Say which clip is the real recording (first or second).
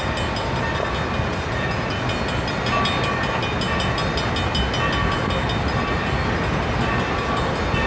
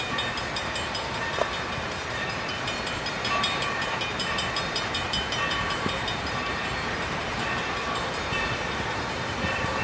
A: first